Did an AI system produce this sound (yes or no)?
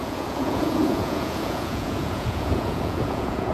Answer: yes